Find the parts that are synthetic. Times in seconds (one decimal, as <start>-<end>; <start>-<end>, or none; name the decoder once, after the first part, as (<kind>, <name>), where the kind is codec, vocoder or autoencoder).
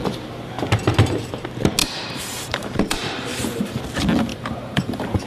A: 1.8-3.8 (vocoder, BigVGAN v2); 4.3-5.3